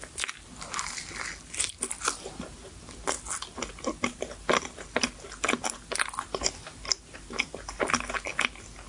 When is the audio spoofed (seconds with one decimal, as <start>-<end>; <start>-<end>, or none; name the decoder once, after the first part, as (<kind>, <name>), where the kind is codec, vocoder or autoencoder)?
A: none